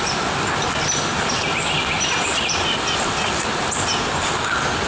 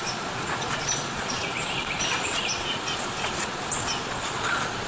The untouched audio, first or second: first